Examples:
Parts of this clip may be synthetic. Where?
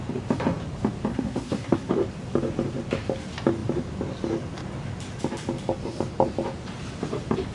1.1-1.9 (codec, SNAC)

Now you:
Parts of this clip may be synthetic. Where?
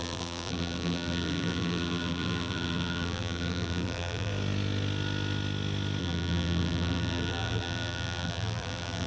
0.0-4.3 (vocoder, BigVGAN v2); 6.0-9.1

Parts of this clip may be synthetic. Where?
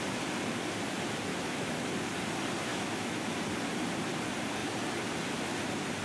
1.3-1.8 (autoencoder, DAC-VAE); 2.7-3.4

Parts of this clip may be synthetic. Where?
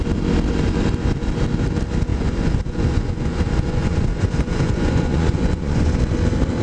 2.1-5.9 (vocoder, Vocos)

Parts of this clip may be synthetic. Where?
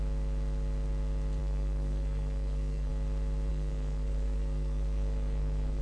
1.4-2.9 (codec, SNAC); 3.5-5.8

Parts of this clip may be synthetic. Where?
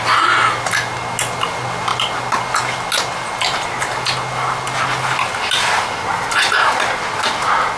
none